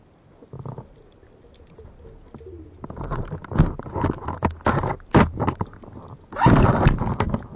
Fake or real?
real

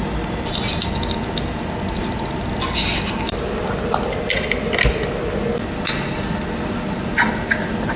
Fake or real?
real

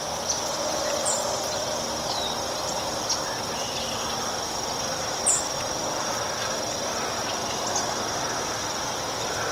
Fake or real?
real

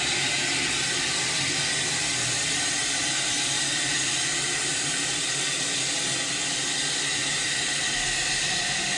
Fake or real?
real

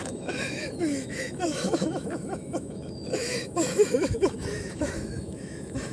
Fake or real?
fake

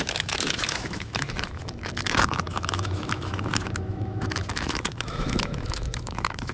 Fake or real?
fake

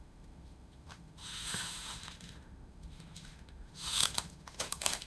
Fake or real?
fake